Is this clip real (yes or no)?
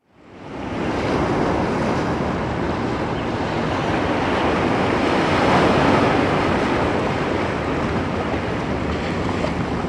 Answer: yes